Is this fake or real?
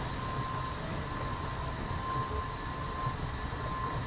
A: real